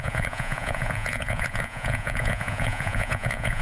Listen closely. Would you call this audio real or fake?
fake